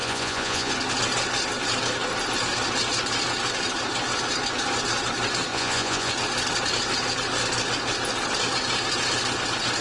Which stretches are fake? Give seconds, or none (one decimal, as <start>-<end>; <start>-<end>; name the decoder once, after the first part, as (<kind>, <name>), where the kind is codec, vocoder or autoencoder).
0.0-0.7 (vocoder, Vocos); 5.5-6.1